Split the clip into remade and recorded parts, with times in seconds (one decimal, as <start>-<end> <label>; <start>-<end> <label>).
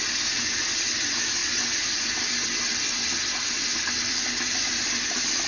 0.0-5.5 recorded